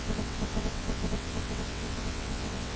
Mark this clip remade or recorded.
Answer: remade